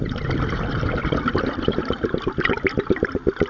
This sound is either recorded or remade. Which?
recorded